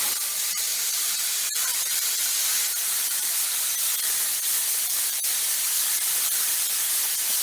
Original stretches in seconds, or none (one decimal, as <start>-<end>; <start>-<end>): 3.9-4.5; 6.5-7.4